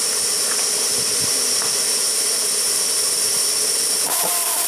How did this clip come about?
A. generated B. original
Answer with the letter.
B